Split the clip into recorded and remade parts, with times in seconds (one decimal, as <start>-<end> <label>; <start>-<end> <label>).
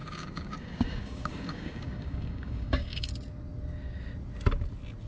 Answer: 0.0-3.1 remade; 3.1-5.1 recorded